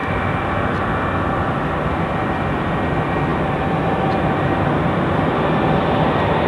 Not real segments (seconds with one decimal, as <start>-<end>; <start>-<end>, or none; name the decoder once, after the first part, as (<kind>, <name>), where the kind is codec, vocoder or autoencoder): none

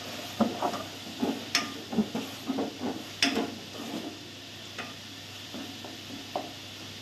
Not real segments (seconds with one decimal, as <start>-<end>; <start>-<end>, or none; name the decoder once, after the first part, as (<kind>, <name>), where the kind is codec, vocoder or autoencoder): none

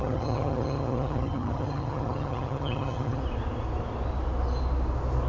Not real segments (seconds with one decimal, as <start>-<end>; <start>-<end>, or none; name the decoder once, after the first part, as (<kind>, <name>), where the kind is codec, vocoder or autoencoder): 0.0-3.2 (vocoder, HiFi-GAN)

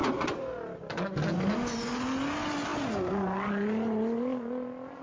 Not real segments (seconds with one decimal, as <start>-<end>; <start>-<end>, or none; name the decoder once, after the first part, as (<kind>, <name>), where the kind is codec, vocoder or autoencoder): none

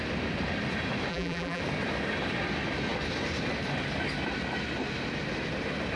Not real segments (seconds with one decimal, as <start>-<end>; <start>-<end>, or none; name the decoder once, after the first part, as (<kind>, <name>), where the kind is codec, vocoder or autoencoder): 1.1-1.6 (vocoder, BigVGAN v2)

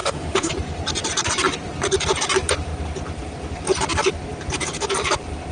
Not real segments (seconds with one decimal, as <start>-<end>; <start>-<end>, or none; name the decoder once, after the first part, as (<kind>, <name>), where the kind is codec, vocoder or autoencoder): 0.0-0.5 (autoencoder, DAC-VAE)